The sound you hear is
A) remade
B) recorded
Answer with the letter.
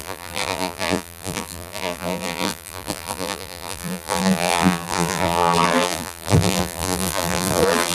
A